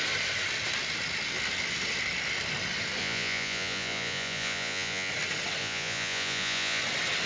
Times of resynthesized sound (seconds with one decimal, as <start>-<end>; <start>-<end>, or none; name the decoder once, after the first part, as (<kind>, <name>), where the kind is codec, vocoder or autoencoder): 3.0-5.1 (vocoder, Vocos); 5.6-6.8